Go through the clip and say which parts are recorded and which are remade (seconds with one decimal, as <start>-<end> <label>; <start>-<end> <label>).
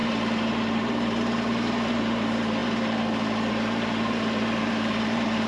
0.0-5.5 remade